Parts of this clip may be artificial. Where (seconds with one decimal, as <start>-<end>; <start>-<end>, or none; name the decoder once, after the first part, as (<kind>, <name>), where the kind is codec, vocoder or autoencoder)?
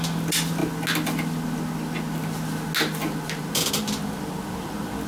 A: none